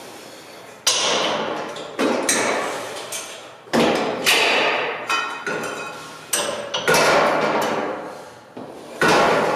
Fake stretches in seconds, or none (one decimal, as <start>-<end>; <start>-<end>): none